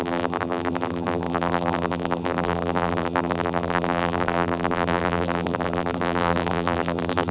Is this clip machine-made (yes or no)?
yes